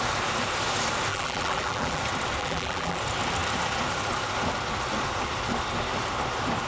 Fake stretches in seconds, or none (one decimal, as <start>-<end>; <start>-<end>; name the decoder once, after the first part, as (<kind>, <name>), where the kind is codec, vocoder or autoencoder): 1.1-2.0 (vocoder, BigVGAN v2); 2.4-3.0